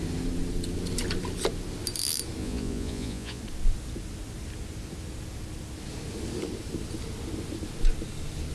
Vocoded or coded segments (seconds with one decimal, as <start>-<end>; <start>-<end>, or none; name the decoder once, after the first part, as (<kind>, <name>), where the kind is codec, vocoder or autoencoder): 2.4-3.4 (vocoder, Vocos)

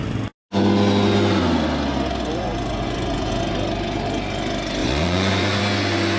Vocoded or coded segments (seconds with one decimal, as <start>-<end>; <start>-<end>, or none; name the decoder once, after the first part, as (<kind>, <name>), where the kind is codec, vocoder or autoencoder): 2.3-3.4 (vocoder, Vocos); 4.8-5.6